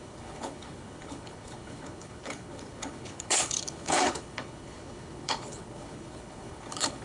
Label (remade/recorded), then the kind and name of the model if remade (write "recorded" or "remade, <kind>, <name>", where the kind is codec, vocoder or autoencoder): remade, codec, HILCodec